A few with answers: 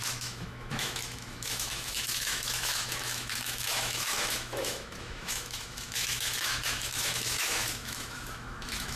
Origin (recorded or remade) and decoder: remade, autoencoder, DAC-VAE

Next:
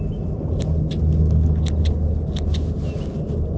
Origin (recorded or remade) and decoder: recorded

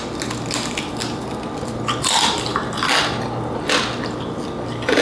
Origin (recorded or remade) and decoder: recorded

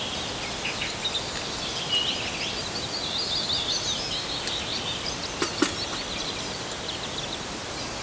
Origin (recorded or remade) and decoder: recorded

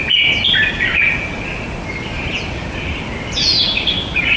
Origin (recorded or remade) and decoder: recorded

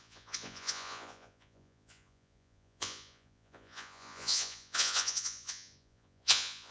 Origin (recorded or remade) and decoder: remade, vocoder, Vocos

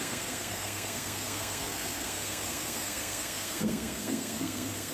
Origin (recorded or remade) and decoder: remade, codec, SNAC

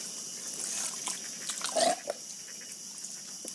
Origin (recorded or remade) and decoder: recorded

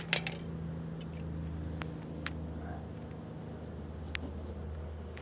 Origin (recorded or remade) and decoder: recorded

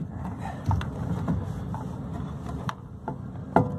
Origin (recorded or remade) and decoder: recorded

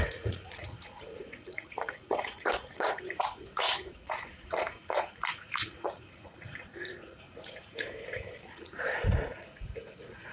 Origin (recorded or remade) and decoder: remade, vocoder, Vocos